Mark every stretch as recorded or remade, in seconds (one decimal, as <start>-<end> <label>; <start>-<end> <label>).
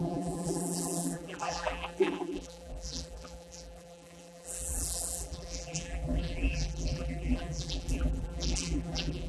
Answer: 0.0-9.3 remade